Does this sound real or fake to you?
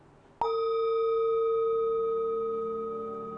real